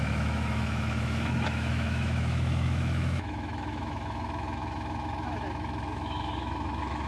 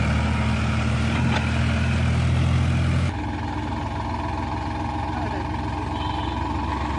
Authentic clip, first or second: second